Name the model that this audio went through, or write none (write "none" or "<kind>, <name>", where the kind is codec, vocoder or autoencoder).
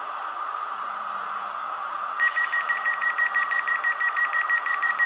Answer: vocoder, Vocos